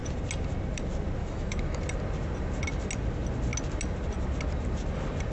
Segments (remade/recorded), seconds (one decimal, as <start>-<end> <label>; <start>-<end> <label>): 0.0-1.2 recorded; 1.2-1.8 remade; 1.8-5.3 recorded